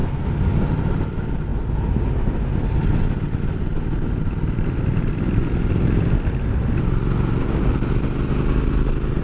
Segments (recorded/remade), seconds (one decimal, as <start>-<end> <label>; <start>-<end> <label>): 0.0-9.2 recorded